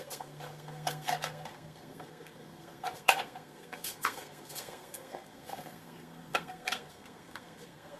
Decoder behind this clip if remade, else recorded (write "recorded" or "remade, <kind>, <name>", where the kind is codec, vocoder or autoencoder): remade, codec, SNAC